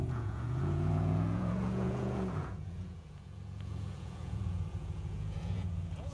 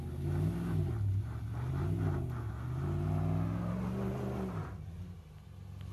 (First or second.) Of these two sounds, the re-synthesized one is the first